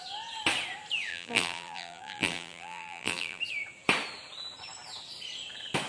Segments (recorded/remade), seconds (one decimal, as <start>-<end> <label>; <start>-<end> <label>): 0.0-1.1 recorded; 1.1-3.4 remade; 3.4-5.9 recorded